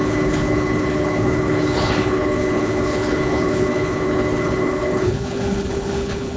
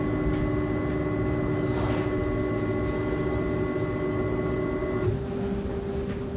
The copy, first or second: first